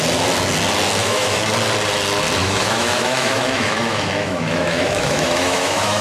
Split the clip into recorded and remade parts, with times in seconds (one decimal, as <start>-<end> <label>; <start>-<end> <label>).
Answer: 0.0-1.0 recorded; 1.0-1.5 remade; 1.5-2.4 recorded; 2.4-6.0 remade